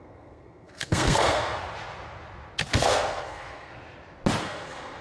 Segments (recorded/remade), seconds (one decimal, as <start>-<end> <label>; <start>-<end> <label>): 0.0-1.6 remade; 1.6-2.7 recorded; 2.7-3.7 remade; 3.7-4.4 recorded; 4.4-5.0 remade